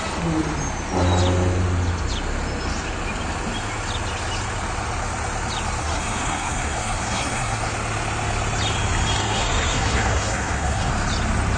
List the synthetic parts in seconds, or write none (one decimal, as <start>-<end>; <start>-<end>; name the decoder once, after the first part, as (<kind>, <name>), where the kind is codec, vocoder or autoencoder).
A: 5.8-7.6 (codec, SNAC); 9.2-10.9